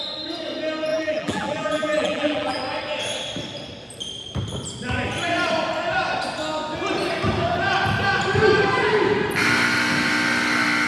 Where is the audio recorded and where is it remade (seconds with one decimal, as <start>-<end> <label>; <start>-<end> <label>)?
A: 0.0-0.9 recorded; 0.9-2.6 remade; 2.6-10.9 recorded